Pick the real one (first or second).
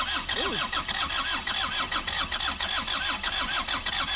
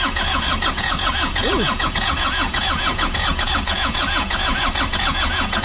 first